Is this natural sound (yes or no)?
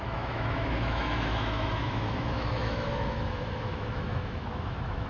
no